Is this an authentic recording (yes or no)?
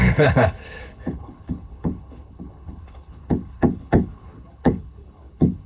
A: no